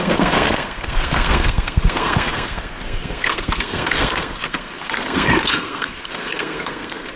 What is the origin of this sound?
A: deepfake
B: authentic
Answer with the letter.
A